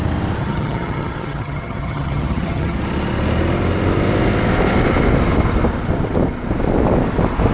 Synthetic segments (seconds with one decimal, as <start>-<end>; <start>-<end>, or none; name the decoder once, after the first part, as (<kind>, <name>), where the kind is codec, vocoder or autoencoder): 0.4-2.8 (vocoder, HiFi-GAN)